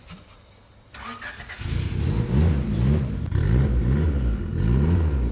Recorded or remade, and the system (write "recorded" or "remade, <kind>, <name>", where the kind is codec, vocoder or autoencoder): recorded